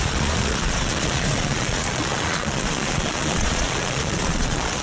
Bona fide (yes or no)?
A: no